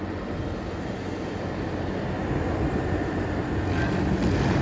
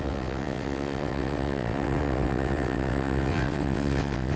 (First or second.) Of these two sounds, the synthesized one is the second